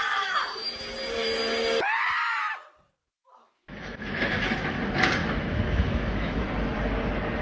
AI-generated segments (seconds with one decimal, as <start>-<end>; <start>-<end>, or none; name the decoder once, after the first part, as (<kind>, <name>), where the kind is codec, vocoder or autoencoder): 3.0-4.8 (autoencoder, DAC-VAE); 5.2-6.4